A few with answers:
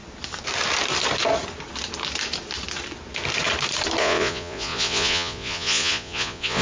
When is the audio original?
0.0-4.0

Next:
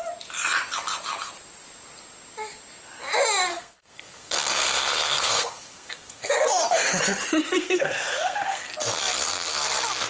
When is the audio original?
0.0-3.5; 7.0-7.4; 8.7-10.1